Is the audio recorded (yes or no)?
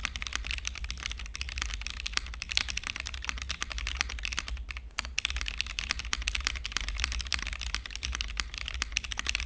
yes